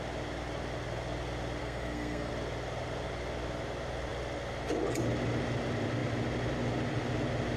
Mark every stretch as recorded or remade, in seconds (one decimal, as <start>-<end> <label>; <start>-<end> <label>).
0.0-1.6 recorded; 1.6-2.3 remade; 2.3-7.6 recorded